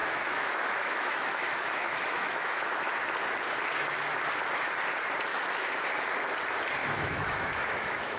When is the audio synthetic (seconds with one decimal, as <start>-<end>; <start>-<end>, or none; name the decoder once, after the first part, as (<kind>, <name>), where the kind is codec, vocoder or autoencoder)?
0.0-2.9 (autoencoder, DAC-VAE); 5.3-5.8; 6.8-8.2